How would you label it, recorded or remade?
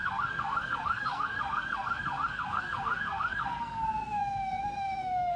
remade